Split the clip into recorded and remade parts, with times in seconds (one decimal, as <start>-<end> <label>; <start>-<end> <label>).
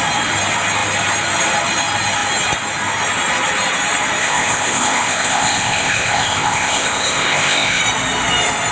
0.0-4.2 recorded; 4.2-7.8 remade; 7.8-8.7 recorded